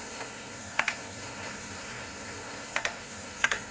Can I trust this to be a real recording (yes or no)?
no